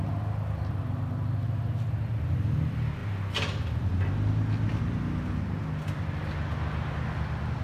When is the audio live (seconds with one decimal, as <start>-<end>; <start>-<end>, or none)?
0.0-7.6